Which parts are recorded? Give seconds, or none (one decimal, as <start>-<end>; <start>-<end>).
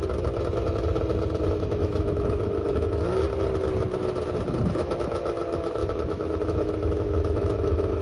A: 0.0-1.4; 3.2-4.7